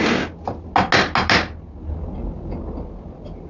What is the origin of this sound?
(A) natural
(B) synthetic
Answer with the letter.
A